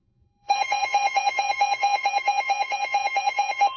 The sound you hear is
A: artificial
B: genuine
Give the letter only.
A